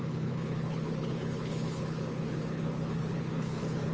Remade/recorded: remade